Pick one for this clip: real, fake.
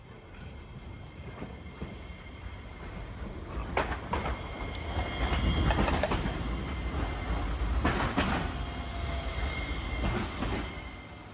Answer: real